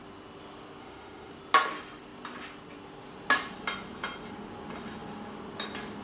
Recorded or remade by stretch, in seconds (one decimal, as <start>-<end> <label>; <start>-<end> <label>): 0.0-0.8 recorded; 0.8-1.3 remade; 1.3-6.0 recorded